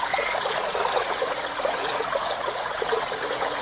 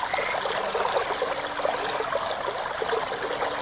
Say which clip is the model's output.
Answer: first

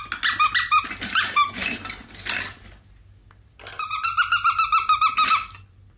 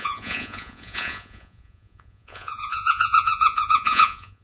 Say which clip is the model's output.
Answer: second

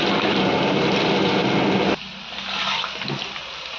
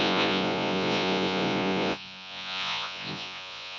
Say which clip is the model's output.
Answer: second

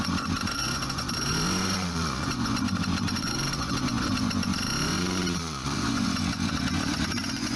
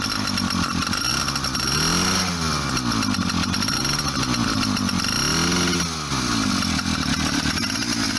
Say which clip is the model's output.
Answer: first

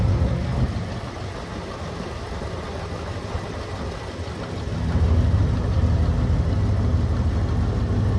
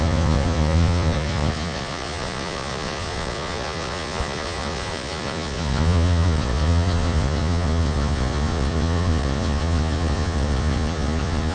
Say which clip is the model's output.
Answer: second